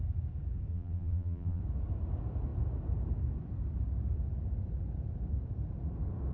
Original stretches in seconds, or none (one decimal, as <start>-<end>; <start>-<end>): 0.0-0.7; 1.6-6.3